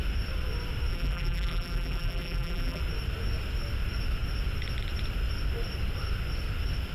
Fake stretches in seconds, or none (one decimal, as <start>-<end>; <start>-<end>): 0.9-2.8